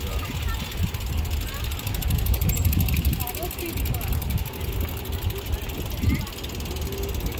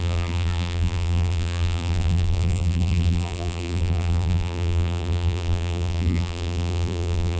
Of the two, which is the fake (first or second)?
second